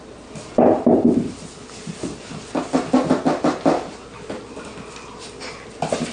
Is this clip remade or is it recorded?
recorded